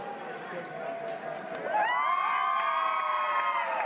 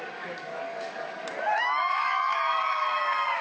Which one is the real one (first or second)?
first